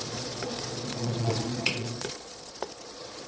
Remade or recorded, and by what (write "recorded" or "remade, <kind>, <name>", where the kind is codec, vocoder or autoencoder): remade, vocoder, Vocos